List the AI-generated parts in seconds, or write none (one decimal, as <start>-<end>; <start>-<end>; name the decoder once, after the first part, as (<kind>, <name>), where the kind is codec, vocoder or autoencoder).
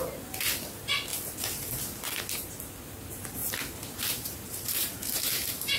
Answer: 3.4-5.8 (vocoder, BigVGAN v2)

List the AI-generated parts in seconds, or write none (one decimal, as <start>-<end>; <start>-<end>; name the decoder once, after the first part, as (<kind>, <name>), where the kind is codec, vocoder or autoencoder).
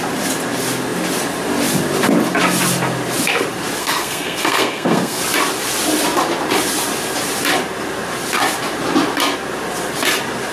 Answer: 3.8-5.2 (codec, SNAC)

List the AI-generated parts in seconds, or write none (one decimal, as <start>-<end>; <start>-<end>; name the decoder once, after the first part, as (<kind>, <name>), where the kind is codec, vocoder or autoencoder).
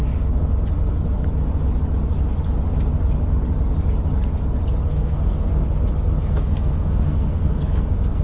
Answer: 4.9-5.5 (codec, SNAC); 6.2-8.2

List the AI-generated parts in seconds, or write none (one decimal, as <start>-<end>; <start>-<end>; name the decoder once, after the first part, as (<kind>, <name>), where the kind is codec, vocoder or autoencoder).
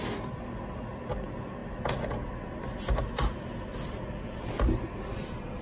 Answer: none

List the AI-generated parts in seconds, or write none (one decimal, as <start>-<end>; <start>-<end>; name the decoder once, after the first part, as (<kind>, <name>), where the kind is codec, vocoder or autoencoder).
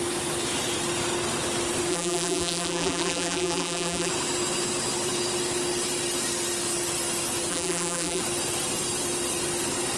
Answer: 1.9-4.1 (vocoder, BigVGAN v2); 7.5-8.2